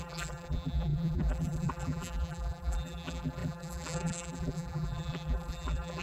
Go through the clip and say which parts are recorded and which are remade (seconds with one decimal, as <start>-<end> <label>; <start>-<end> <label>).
0.0-6.0 remade

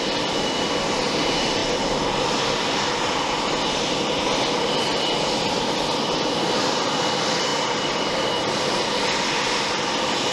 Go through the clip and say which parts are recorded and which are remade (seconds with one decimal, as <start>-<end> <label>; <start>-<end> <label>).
0.0-10.3 recorded

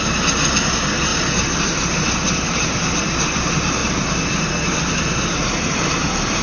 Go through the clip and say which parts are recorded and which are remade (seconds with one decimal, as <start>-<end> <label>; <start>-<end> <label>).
0.0-3.8 remade; 3.8-4.8 recorded; 4.8-6.4 remade

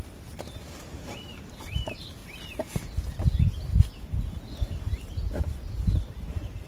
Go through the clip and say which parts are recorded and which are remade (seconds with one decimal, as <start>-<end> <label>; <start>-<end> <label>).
0.0-2.2 remade; 2.2-4.7 recorded; 4.7-6.7 remade

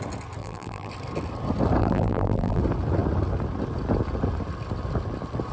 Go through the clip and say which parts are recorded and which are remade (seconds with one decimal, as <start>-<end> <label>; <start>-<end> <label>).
0.0-0.4 recorded; 0.4-0.9 remade; 0.9-1.8 recorded; 1.8-2.6 remade; 2.6-5.5 recorded

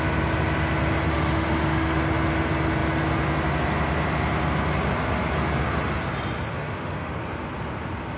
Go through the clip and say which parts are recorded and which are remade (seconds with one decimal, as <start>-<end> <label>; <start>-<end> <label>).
0.0-1.1 recorded; 1.1-2.0 remade; 2.0-6.5 recorded; 6.5-7.1 remade; 7.1-8.2 recorded

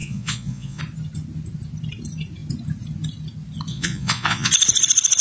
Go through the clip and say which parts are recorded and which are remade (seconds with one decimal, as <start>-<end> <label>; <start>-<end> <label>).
0.0-0.8 remade; 0.8-3.7 recorded; 3.7-4.5 remade; 4.5-5.2 recorded

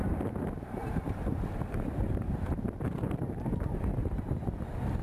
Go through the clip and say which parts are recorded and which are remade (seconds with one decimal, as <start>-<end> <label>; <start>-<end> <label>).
0.0-0.8 recorded; 0.8-3.3 remade; 3.3-4.0 recorded; 4.0-4.6 remade; 4.6-5.0 recorded